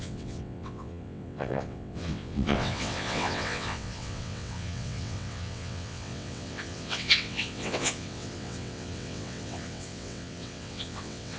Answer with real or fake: fake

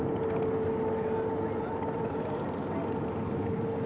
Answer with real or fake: real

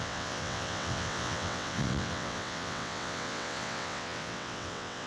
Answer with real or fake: fake